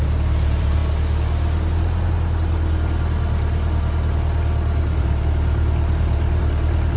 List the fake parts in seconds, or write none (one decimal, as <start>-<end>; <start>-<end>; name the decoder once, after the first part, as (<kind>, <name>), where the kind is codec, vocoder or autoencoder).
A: 0.0-0.8 (vocoder, BigVGAN v2); 5.0-7.0